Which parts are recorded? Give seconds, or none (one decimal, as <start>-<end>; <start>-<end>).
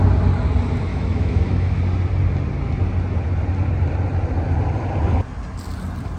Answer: 0.0-0.9; 1.8-6.2